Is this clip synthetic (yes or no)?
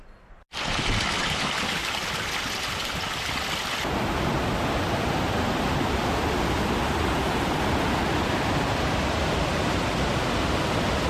no